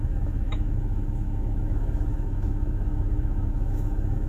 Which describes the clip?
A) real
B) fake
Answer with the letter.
B